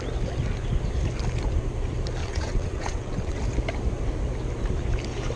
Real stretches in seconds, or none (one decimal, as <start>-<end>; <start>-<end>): 0.0-2.2; 3.4-5.4